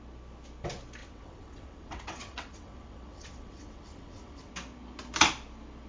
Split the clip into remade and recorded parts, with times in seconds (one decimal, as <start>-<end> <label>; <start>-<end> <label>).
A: 0.0-1.0 recorded; 1.0-4.5 remade; 4.5-5.9 recorded